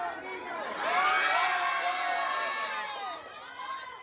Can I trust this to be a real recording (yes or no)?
yes